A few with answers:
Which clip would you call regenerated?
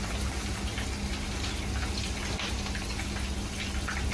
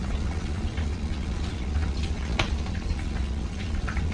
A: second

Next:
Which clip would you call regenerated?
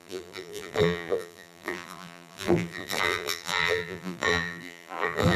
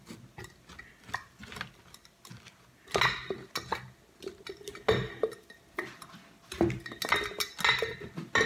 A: first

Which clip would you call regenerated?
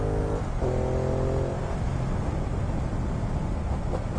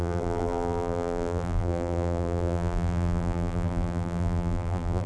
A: second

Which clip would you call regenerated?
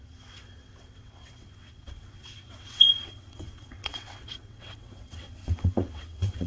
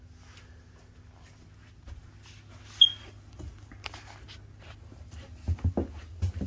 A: first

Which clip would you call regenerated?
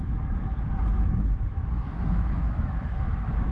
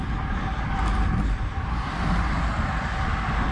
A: first